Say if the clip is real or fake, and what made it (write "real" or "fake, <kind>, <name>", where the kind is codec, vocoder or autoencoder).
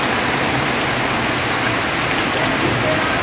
real